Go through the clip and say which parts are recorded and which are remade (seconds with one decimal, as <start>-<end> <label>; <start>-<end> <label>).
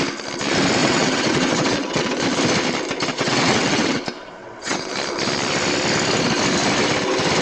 0.0-0.8 recorded; 0.8-2.1 remade; 2.1-3.1 recorded; 3.1-4.0 remade; 4.0-4.4 recorded; 4.4-4.9 remade; 4.9-7.4 recorded